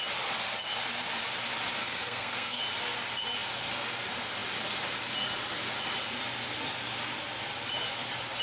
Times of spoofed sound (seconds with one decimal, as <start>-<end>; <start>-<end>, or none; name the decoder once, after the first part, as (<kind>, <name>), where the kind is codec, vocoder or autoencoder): 1.8-2.6 (codec, SNAC)